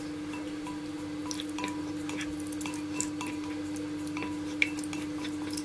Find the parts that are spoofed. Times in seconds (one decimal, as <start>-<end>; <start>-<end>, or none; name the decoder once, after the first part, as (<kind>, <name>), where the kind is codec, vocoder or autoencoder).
none